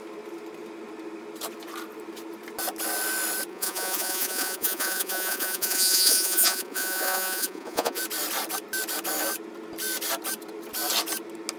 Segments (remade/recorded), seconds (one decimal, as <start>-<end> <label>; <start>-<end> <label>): 0.0-3.5 recorded; 3.5-8.0 remade; 8.0-11.6 recorded